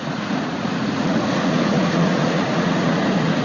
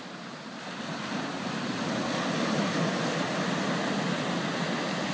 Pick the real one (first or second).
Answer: second